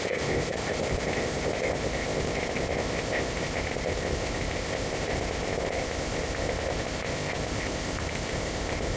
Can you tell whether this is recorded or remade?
remade